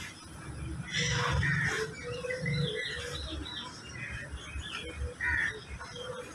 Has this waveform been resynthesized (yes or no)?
no